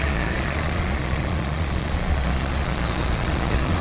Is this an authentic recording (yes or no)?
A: no